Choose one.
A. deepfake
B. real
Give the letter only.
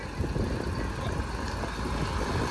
B